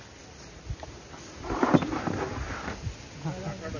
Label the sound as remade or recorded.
recorded